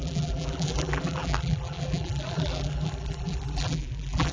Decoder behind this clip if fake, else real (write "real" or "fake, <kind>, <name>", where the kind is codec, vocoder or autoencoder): fake, vocoder, BigVGAN v2